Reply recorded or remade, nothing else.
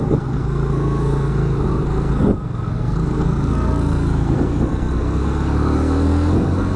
remade